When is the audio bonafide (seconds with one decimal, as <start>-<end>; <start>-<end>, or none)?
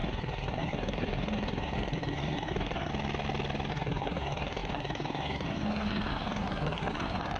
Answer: 2.9-3.7